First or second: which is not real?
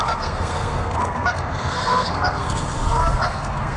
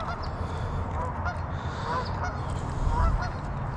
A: first